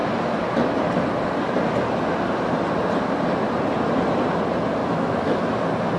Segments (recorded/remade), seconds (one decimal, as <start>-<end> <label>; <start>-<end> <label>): 0.0-4.8 recorded; 4.8-5.4 remade; 5.4-6.0 recorded

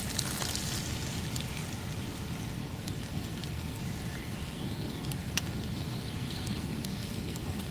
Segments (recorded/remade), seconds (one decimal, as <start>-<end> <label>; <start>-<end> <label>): 0.0-2.6 recorded; 2.6-3.8 remade; 3.8-4.2 recorded; 4.2-7.7 remade

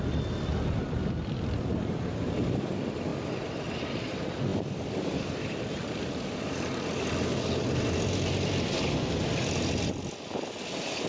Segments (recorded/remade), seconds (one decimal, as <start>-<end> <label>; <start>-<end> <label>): 0.0-0.5 recorded; 0.5-1.0 remade; 1.0-3.1 recorded; 3.1-3.8 remade; 3.8-4.5 recorded; 4.5-8.7 remade; 8.7-11.1 recorded

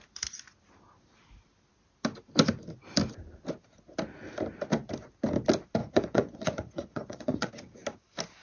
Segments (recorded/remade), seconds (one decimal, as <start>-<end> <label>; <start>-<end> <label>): 0.0-5.8 recorded; 5.8-7.5 remade; 7.5-8.4 recorded

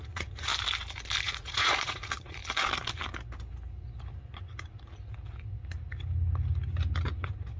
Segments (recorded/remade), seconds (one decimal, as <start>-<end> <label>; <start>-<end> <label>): 0.0-0.5 remade; 0.5-1.2 recorded; 1.2-2.4 remade; 2.4-7.0 recorded; 7.0-7.6 remade

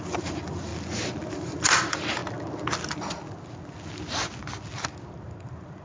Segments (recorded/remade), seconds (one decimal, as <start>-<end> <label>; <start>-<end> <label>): 0.0-0.7 remade; 0.7-1.3 recorded; 1.3-2.2 remade; 2.2-5.1 recorded; 5.1-5.8 remade

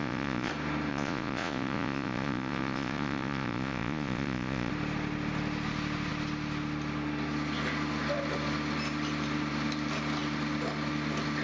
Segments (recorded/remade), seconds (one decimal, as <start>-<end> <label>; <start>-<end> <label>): 0.0-0.5 remade; 0.5-0.9 recorded; 0.9-4.7 remade; 4.7-11.4 recorded

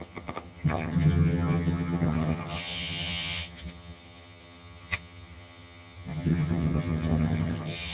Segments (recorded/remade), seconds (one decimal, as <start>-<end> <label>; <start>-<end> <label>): 0.0-7.9 remade